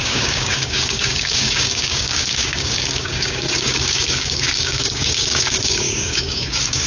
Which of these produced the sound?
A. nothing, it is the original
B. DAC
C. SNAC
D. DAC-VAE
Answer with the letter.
B